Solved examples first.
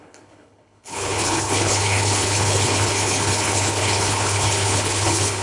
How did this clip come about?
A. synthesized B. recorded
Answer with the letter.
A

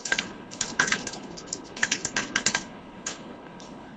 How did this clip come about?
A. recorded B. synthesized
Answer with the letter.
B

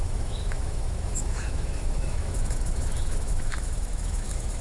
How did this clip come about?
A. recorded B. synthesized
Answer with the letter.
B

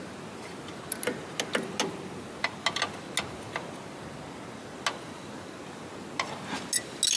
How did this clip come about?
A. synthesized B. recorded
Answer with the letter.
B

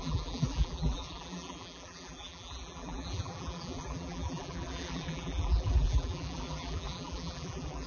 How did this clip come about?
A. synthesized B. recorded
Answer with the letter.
A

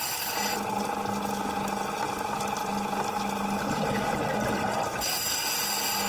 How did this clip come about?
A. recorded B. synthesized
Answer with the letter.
A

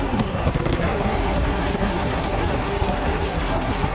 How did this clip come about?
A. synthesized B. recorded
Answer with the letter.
A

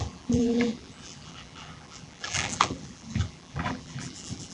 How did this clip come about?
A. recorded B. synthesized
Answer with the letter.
B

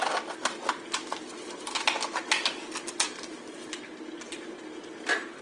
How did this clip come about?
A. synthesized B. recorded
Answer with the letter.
B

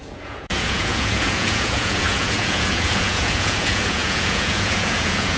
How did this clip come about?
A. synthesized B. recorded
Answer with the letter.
A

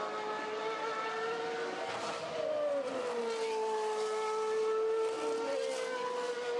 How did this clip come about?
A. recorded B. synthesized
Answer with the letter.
A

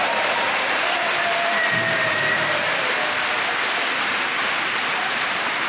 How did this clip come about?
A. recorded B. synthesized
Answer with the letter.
B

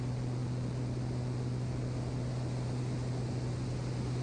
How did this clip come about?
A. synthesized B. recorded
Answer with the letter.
B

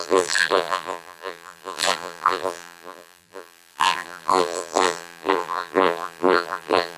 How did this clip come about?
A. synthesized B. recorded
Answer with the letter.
A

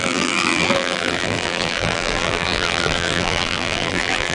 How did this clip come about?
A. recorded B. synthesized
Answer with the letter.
B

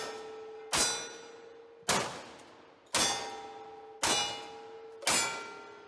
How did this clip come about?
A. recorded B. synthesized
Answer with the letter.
A